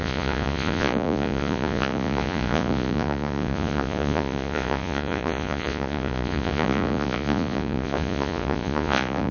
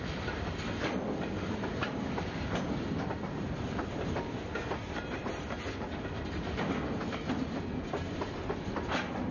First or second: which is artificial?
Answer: first